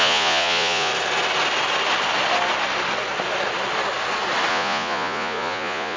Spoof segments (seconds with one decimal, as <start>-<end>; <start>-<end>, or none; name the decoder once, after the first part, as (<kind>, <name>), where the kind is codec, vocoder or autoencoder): 0.0-0.9 (vocoder, Vocos); 4.5-6.0